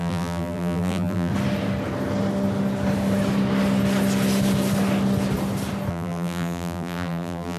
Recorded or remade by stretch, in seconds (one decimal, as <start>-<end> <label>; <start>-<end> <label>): 0.0-1.3 remade; 1.3-5.9 recorded; 5.9-7.6 remade